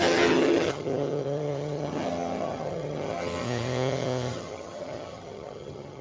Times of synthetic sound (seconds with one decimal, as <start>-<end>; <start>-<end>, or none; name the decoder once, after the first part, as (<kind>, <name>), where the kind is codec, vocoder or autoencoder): 0.0-6.0 (vocoder, HiFi-GAN)